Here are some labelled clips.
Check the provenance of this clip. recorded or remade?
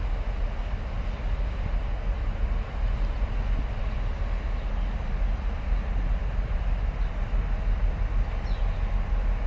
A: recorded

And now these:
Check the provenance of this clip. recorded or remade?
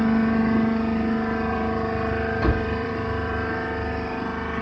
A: remade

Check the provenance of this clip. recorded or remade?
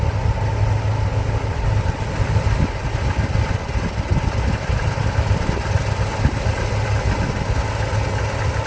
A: recorded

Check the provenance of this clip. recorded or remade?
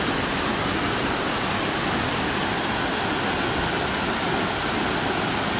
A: recorded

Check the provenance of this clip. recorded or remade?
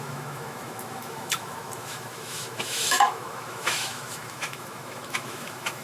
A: remade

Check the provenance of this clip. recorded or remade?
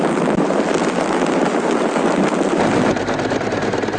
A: recorded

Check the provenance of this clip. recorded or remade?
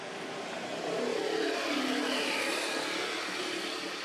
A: recorded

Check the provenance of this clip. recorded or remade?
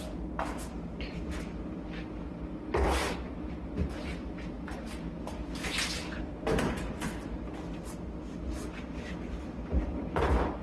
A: recorded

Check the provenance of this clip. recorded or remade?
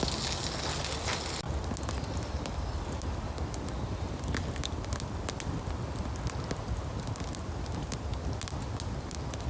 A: recorded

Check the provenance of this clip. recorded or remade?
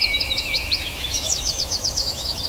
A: remade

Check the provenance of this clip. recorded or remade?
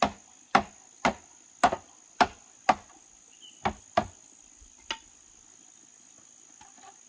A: recorded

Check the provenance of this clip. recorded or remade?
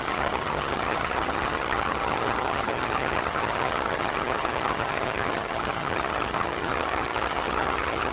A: remade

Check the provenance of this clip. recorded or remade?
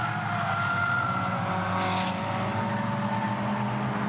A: recorded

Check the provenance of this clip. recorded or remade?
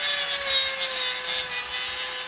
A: recorded